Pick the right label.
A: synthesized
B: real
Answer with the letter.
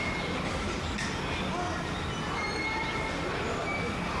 B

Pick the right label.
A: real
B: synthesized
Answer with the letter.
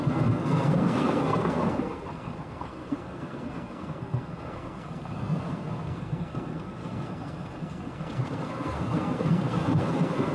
B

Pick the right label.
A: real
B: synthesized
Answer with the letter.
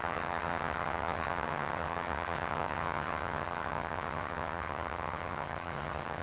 B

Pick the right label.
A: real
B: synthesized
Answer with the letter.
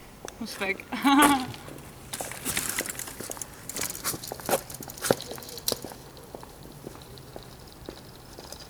B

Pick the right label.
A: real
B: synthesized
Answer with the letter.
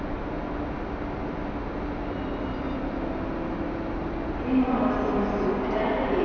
A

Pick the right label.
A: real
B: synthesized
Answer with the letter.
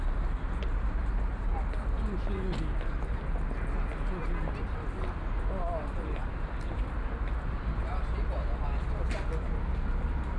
A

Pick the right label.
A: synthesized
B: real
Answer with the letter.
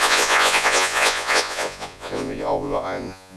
A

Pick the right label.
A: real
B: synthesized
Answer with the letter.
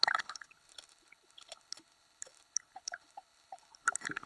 B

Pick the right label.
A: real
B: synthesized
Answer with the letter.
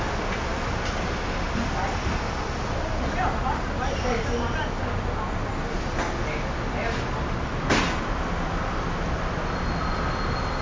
A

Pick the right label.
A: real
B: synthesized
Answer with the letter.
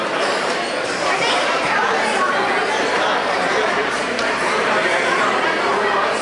B